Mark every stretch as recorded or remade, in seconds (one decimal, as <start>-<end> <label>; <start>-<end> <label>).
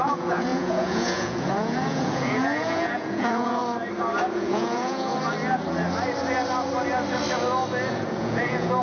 0.0-3.6 remade; 3.6-4.3 recorded; 4.3-5.1 remade; 5.1-7.9 recorded; 7.9-8.8 remade